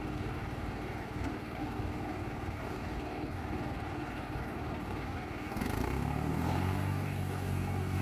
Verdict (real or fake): fake